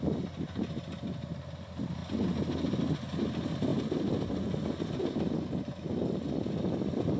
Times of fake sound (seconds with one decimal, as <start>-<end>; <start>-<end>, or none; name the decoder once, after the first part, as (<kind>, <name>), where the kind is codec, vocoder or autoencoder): none